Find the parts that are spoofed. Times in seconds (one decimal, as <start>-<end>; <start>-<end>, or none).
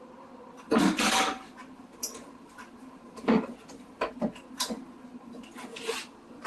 none